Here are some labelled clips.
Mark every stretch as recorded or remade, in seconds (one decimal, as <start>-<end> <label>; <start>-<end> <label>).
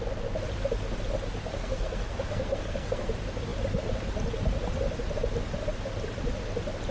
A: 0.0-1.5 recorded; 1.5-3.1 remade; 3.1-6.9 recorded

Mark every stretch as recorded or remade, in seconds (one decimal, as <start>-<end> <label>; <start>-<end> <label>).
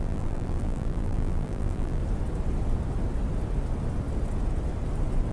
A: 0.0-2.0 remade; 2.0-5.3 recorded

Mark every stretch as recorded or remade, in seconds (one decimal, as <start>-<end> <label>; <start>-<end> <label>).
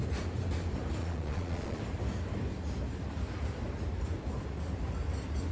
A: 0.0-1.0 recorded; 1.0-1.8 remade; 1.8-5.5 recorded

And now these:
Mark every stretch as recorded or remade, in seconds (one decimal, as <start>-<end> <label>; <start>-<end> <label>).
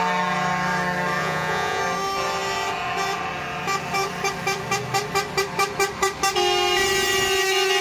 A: 0.0-1.2 recorded; 1.2-1.8 remade; 1.8-7.8 recorded